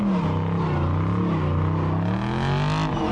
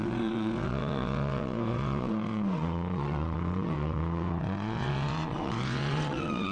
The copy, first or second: second